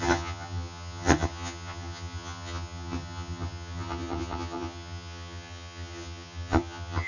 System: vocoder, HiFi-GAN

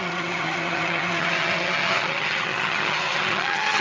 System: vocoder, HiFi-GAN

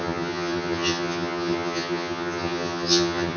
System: vocoder, HiFi-GAN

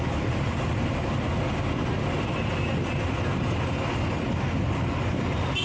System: none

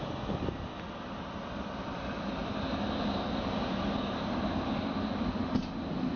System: none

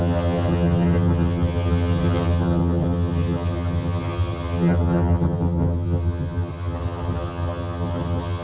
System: vocoder, HiFi-GAN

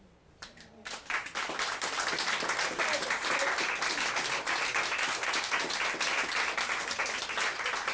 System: none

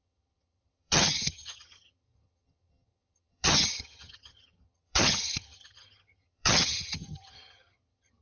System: vocoder, HiFi-GAN